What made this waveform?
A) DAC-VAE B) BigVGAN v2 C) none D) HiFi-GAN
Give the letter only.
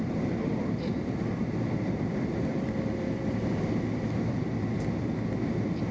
B